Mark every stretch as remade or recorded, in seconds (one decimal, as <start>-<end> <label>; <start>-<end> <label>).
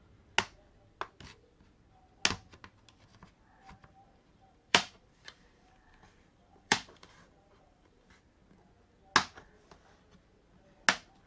0.0-3.8 recorded; 3.8-8.2 remade; 8.2-11.3 recorded